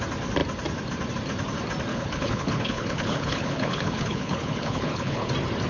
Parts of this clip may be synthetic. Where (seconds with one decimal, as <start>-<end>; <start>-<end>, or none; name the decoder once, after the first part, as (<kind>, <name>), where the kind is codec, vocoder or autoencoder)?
1.9-5.3 (codec, HILCodec)